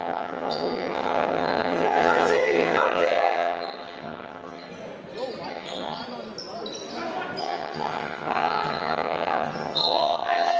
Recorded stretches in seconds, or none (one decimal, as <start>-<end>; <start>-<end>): 4.7-5.5; 6.0-7.4